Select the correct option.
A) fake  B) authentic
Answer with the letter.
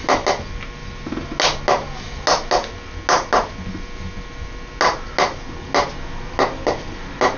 B